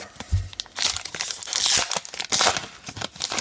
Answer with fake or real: real